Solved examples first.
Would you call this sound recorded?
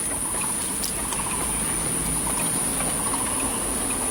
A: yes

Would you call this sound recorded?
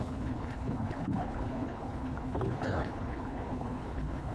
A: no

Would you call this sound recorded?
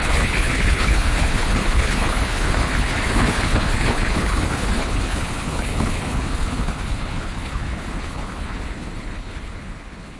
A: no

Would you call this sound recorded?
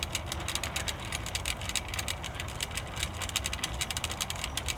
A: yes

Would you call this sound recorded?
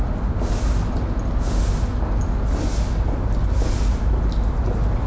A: yes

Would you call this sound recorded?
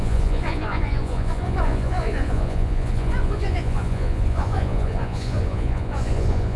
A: no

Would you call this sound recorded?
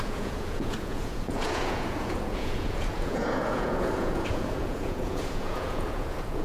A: no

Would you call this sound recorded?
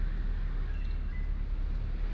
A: yes